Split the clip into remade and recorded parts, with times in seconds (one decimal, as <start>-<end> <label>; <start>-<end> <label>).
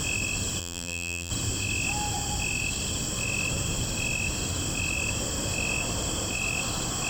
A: 0.0-0.6 recorded; 0.6-1.3 remade; 1.3-7.1 recorded